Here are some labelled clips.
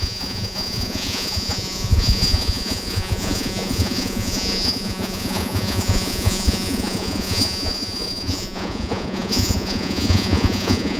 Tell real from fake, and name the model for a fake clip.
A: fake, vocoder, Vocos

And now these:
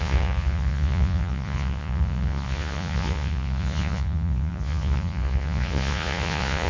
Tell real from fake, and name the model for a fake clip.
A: fake, vocoder, Vocos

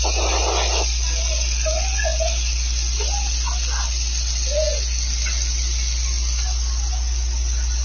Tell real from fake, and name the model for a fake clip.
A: real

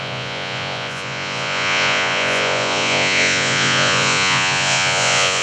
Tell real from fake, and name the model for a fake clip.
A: fake, vocoder, Vocos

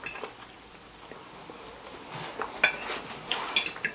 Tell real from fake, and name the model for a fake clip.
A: real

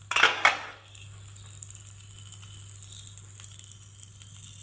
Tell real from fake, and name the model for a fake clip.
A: real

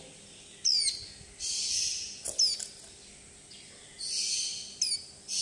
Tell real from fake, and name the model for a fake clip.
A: real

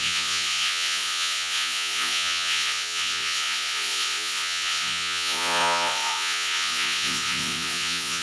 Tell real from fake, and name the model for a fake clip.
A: fake, vocoder, Vocos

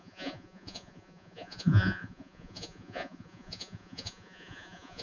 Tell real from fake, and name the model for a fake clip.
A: fake, vocoder, Vocos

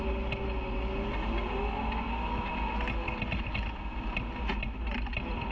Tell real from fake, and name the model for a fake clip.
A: real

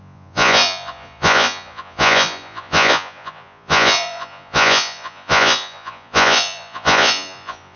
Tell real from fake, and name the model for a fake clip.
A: fake, vocoder, Vocos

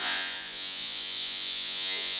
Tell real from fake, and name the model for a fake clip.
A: fake, vocoder, Vocos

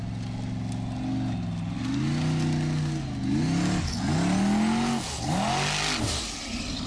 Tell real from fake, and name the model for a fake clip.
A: real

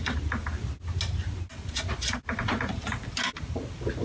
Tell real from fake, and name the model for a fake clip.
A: real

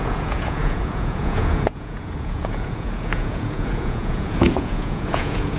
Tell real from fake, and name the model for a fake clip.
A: fake, vocoder, Vocos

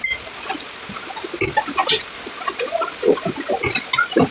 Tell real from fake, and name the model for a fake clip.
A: real